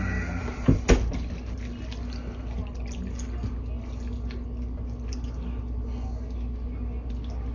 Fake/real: real